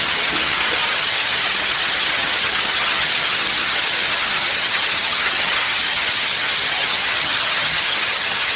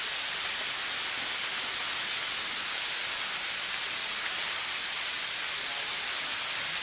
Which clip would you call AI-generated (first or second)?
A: first